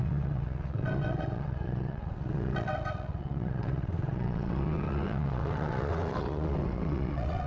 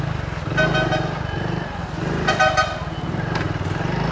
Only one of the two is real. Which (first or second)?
second